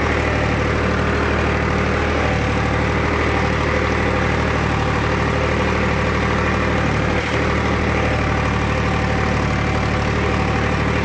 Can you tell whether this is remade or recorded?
recorded